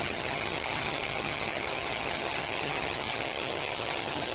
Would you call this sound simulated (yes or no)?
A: yes